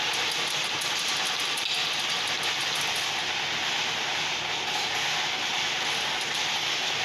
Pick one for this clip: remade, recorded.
recorded